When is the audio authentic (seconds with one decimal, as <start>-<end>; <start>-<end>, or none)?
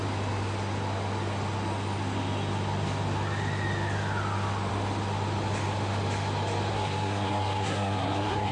0.0-6.7